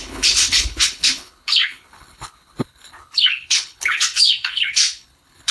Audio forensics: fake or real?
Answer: fake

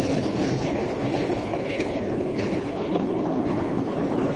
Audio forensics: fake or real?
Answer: fake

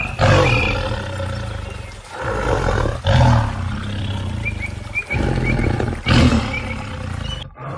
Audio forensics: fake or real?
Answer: real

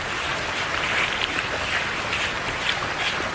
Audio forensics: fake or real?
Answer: real